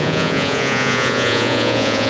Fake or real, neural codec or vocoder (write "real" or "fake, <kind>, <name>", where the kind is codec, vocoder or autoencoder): fake, vocoder, Vocos